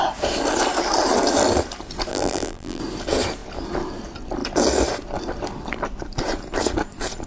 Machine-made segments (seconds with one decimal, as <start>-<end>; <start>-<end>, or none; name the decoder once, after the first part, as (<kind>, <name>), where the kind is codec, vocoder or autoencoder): 2.1-2.8 (vocoder, BigVGAN v2)